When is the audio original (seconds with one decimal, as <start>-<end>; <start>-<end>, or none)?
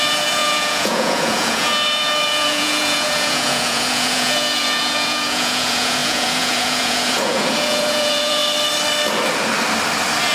8.4-10.3